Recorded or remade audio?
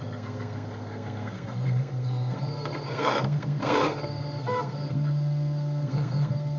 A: remade